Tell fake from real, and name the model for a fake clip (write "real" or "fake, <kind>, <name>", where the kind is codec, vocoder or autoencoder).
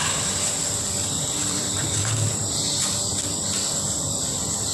fake, vocoder, BigVGAN v2